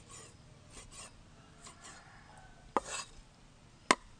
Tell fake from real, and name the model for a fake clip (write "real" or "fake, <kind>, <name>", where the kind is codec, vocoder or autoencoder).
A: real